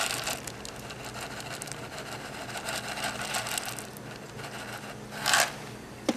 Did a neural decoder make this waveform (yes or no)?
no